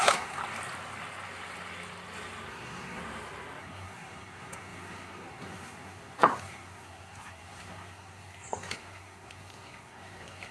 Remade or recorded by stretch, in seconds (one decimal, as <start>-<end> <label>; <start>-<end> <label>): 0.0-0.4 remade; 0.4-2.5 recorded; 2.5-3.0 remade; 3.0-3.6 recorded; 3.6-10.5 remade